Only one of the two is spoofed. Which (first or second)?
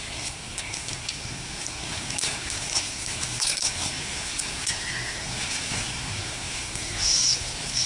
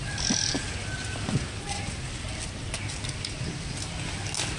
first